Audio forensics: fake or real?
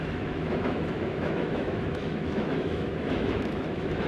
fake